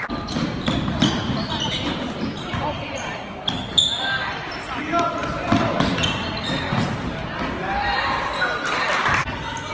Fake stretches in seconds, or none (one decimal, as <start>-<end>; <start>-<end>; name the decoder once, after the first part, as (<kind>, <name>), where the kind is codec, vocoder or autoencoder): none